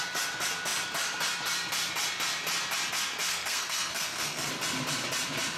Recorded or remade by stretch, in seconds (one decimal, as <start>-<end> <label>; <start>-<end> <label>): 0.0-3.3 recorded; 3.3-4.5 remade; 4.5-5.6 recorded